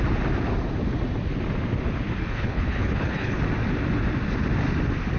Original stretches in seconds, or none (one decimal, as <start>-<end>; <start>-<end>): 0.0-2.2; 3.4-5.2